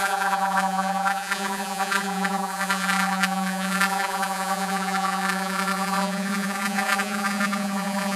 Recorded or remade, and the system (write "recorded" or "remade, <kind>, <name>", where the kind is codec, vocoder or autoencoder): remade, vocoder, Vocos